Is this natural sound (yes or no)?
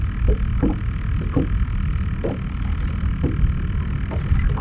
yes